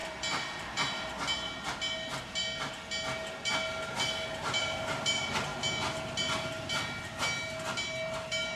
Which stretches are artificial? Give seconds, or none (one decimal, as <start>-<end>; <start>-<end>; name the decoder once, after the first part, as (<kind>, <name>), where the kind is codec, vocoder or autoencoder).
0.0-1.1 (vocoder, BigVGAN v2)